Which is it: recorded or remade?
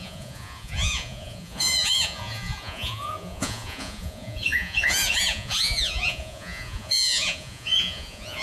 remade